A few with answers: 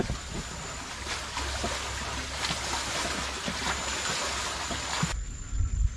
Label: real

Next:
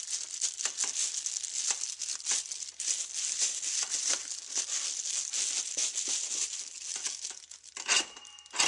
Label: real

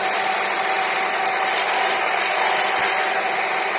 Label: real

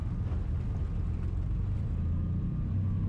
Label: real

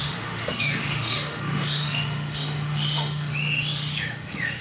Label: fake